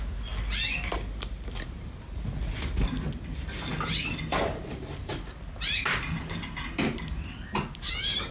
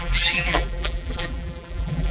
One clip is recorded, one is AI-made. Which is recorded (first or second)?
first